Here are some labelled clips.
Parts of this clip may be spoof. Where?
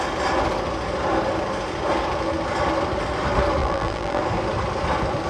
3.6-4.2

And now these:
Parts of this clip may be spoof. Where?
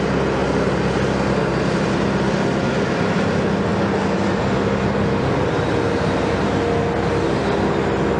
none